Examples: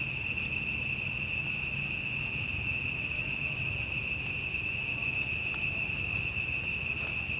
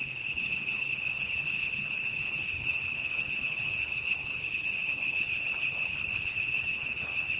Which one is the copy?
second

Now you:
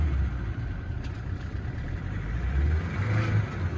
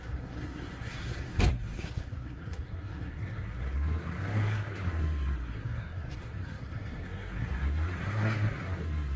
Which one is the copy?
second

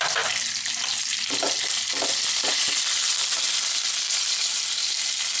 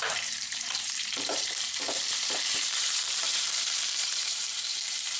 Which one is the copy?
second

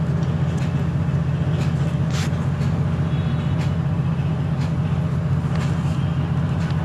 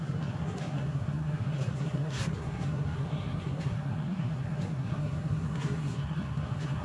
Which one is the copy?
second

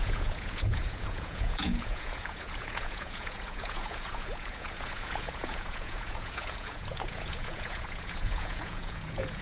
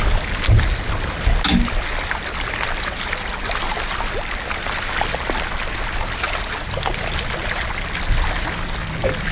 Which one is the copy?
first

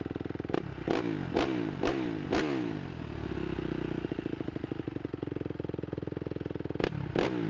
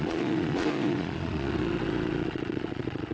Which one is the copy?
second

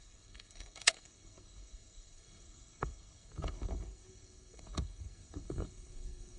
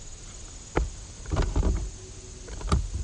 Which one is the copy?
first